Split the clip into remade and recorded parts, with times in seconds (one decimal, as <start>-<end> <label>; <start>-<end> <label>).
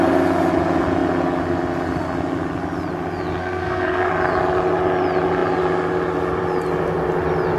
0.0-3.4 recorded; 3.4-4.1 remade; 4.1-7.6 recorded